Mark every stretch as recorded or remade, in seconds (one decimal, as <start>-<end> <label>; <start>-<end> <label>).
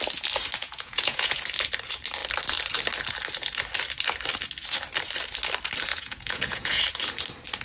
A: 0.0-0.6 recorded; 0.6-1.4 remade; 1.4-5.9 recorded; 5.9-6.8 remade; 6.8-7.6 recorded